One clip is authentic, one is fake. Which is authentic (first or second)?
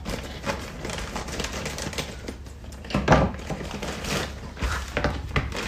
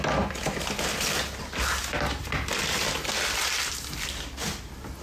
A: second